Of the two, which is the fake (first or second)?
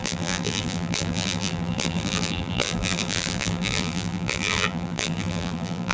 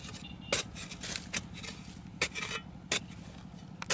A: first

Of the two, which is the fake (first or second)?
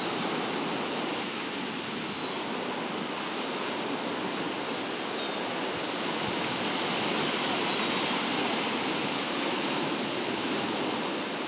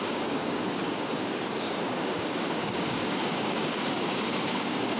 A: second